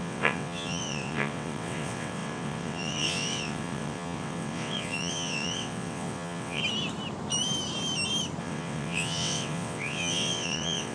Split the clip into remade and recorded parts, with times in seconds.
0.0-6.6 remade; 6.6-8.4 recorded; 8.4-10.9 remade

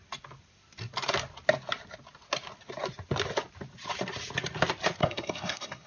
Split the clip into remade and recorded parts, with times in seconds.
0.0-5.0 recorded; 5.0-5.9 remade

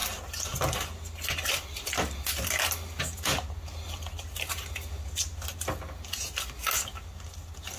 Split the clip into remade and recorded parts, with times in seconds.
0.0-7.8 recorded

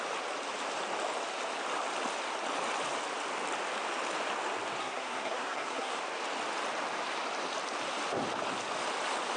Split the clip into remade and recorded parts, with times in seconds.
0.0-4.8 recorded; 4.8-6.0 remade; 6.0-9.4 recorded

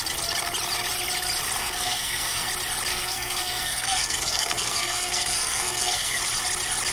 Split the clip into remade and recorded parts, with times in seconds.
0.0-1.6 recorded; 1.6-2.5 remade; 2.5-2.9 recorded; 2.9-6.2 remade; 6.2-6.9 recorded